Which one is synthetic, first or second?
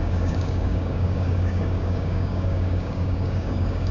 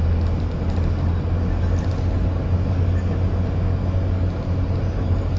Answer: first